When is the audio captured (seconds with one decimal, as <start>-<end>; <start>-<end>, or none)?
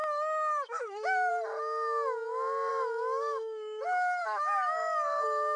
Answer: 1.3-2.7; 3.8-4.2